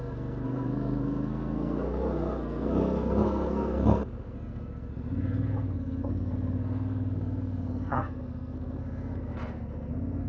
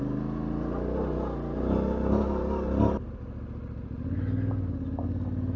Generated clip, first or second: first